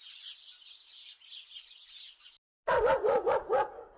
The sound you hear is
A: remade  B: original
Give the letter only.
B